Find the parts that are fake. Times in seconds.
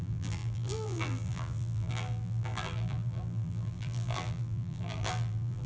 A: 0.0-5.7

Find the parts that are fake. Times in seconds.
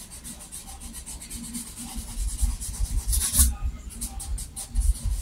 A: none